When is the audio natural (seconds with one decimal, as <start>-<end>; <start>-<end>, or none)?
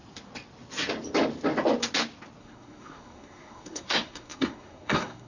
0.0-2.4